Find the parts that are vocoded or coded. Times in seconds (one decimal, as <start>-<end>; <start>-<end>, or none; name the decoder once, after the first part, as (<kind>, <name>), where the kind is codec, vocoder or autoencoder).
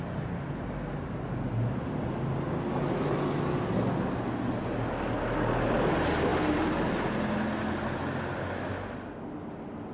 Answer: 6.3-7.0 (vocoder, BigVGAN v2)